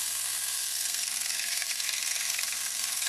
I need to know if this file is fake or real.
fake